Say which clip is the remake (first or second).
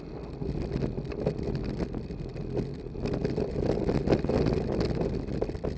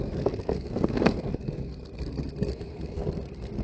second